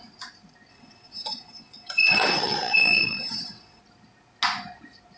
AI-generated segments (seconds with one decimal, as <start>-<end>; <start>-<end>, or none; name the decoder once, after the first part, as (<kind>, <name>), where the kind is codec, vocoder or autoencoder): 0.7-3.8 (vocoder, WaveNeXt)